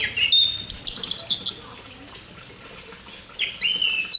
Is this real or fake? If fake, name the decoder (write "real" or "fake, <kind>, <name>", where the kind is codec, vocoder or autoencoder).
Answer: real